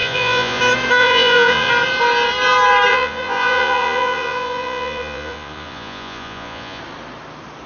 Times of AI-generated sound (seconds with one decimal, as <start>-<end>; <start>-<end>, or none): 0.0-0.6; 1.0-1.7; 2.9-6.8